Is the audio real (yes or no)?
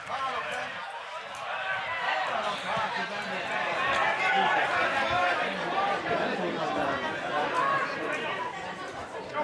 yes